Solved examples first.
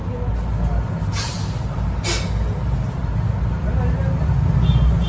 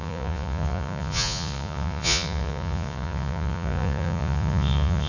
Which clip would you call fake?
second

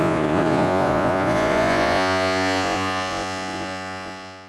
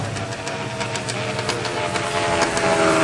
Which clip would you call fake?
first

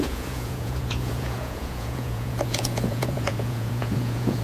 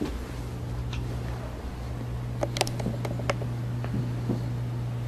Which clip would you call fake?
first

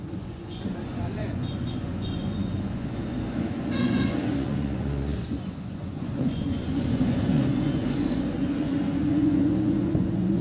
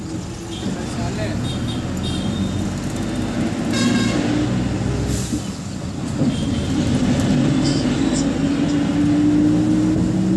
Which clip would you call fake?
first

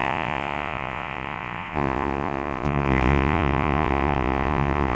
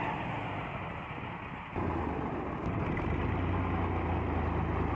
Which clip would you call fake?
first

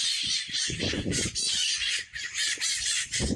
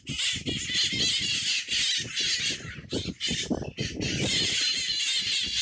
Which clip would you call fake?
first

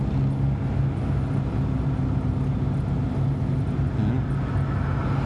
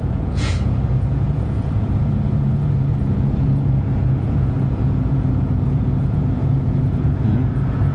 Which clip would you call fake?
second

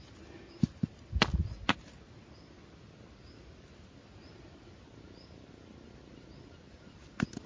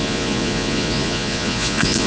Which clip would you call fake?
second